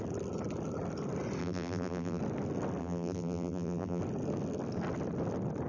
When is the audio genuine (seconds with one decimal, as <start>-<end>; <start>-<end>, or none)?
0.0-1.4; 2.2-2.8; 4.0-5.7